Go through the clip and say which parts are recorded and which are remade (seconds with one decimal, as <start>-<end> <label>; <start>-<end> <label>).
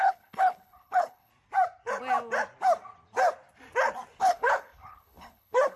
0.0-1.3 remade; 1.3-4.2 recorded; 4.2-5.8 remade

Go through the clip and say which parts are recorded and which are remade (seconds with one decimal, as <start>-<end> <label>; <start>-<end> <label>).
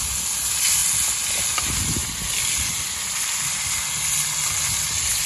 0.0-5.3 recorded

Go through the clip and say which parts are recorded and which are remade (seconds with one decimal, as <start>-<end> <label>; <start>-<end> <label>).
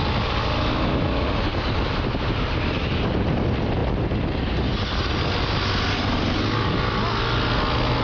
0.0-1.5 recorded; 1.5-2.8 remade; 2.8-8.0 recorded